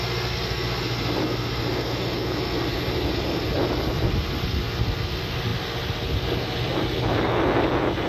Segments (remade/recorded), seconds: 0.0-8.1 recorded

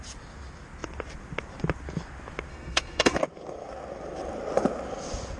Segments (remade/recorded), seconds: 0.0-2.5 recorded; 2.5-3.2 remade; 3.2-5.4 recorded

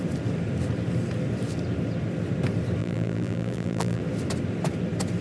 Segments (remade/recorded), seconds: 0.0-2.8 recorded; 2.8-4.0 remade; 4.0-5.2 recorded

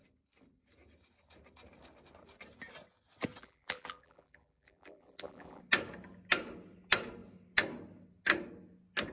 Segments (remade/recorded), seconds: 0.0-3.4 recorded; 3.4-5.6 remade; 5.6-9.1 recorded

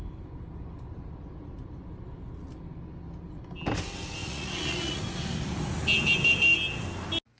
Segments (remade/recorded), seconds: 0.0-4.2 recorded; 4.2-5.0 remade; 5.0-7.4 recorded

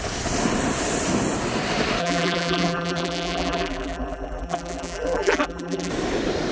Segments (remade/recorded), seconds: 0.0-2.0 recorded; 2.0-5.9 remade; 5.9-6.5 recorded

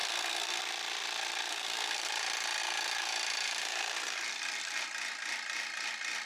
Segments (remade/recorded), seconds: 0.0-0.6 remade; 0.6-1.5 recorded; 1.5-2.1 remade; 2.1-6.3 recorded

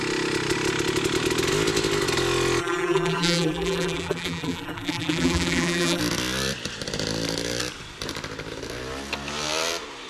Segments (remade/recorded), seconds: 0.0-2.6 recorded; 2.6-6.0 remade; 6.0-10.1 recorded